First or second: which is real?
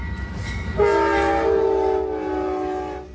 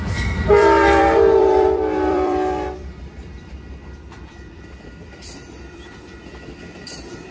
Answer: first